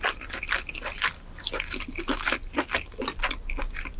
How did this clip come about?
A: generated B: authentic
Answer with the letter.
B